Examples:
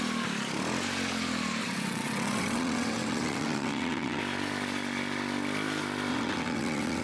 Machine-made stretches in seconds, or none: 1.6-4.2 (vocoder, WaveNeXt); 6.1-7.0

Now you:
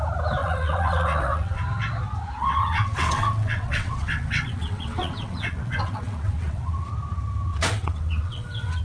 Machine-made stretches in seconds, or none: 0.4-1.6 (vocoder, WaveNeXt); 2.4-6.9; 7.5-8.8

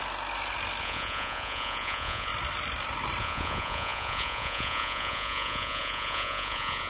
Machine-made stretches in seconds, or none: 0.8-2.3 (vocoder, Vocos); 3.2-6.9